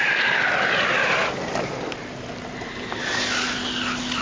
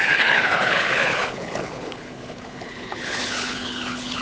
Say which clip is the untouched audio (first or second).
first